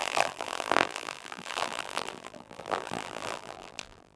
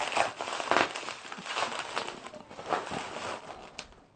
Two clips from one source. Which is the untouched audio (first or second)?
second